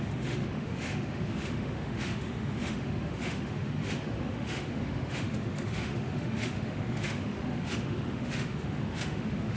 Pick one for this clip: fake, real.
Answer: fake